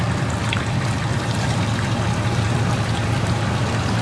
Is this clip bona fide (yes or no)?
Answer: yes